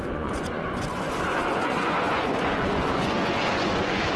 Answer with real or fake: fake